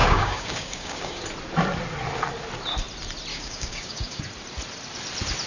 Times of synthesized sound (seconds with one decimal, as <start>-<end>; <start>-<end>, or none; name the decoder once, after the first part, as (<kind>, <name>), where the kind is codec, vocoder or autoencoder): 0.0-1.2 (codec, DAC); 3.3-4.2